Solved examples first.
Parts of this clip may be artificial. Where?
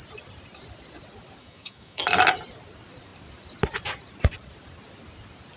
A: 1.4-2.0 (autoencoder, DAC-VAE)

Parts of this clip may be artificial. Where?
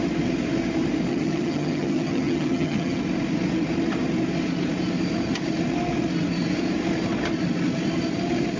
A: 1.1-3.0 (vocoder, HiFi-GAN)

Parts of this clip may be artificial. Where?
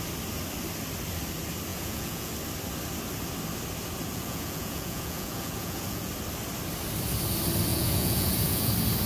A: 1.7-2.3 (vocoder, Vocos); 4.1-6.1; 7.7-8.7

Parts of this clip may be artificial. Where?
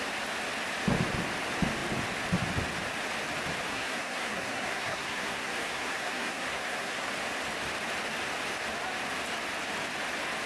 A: 3.7-7.1 (codec, SNAC)